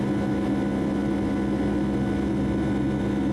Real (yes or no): yes